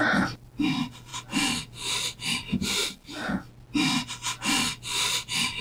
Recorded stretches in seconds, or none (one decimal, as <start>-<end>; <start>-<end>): 0.0-5.6